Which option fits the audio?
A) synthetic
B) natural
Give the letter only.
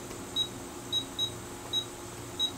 B